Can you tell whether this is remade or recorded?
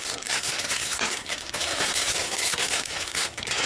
remade